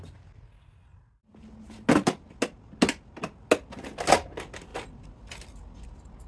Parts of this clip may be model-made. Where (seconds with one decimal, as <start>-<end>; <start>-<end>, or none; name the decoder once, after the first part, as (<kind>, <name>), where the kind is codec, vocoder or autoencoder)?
none